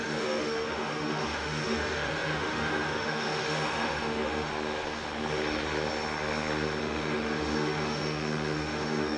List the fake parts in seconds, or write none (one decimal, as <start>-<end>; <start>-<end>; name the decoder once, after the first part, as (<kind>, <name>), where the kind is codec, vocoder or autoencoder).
0.0-4.5 (autoencoder, DAC-VAE); 6.8-9.2